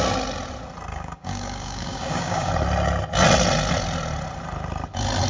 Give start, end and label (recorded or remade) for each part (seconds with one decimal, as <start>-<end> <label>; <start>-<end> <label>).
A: 0.0-0.9 recorded; 0.9-2.5 remade; 2.5-5.3 recorded